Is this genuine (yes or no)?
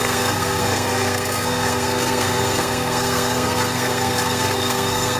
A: no